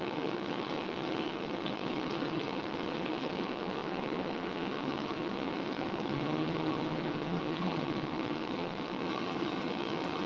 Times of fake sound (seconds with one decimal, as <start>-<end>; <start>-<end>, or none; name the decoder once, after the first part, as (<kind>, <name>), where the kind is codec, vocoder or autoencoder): 0.0-10.3 (vocoder, WaveNeXt)